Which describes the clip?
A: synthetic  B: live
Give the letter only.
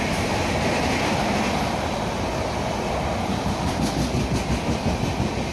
B